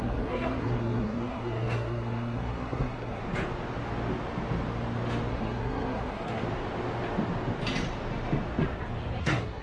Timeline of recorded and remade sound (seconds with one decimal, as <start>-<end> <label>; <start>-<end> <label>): 0.0-3.2 remade; 3.2-5.3 recorded; 5.3-6.4 remade; 6.4-9.2 recorded; 9.2-9.6 remade